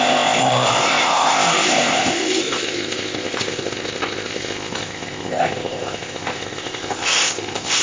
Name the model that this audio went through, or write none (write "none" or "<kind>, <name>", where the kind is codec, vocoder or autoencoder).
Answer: codec, ZipCodec